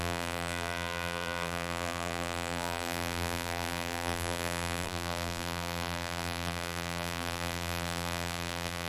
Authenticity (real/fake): fake